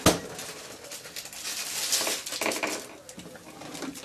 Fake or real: real